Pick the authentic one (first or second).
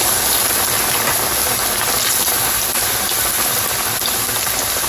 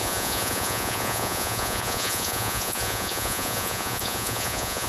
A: first